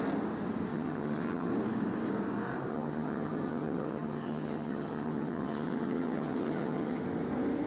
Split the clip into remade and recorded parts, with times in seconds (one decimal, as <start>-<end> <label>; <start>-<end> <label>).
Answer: 0.0-0.7 recorded; 0.7-1.5 remade; 1.5-2.7 recorded; 2.7-7.0 remade; 7.0-7.7 recorded